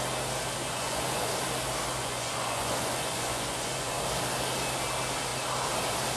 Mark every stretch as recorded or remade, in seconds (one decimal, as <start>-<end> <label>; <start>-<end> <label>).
0.0-0.6 recorded; 0.6-1.3 remade; 1.3-2.0 recorded; 2.0-4.0 remade; 4.0-6.2 recorded